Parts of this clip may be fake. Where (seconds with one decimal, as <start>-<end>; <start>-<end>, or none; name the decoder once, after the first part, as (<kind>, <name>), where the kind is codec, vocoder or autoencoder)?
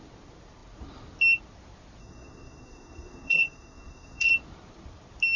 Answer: 2.0-4.3 (codec, SNAC)